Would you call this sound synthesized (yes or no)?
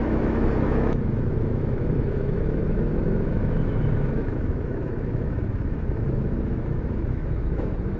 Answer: yes